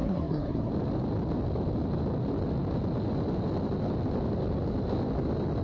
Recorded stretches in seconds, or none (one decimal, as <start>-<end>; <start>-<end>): 0.7-5.6